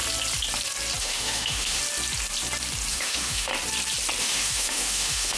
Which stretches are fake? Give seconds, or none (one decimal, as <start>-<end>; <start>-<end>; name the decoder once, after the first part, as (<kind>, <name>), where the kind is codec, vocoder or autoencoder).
1.0-1.8 (autoencoder, DAC-VAE); 2.9-3.5; 4.2-5.4